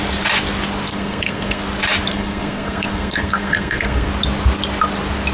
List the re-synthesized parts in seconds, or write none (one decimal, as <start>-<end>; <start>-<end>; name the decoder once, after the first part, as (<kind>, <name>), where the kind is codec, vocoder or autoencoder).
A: 0.9-1.6 (codec, SNAC); 2.1-4.1